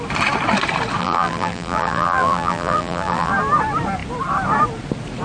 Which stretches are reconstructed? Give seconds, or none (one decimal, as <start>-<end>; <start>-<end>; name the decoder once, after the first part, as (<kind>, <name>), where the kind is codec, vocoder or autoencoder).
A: 1.0-3.3 (vocoder, BigVGAN v2)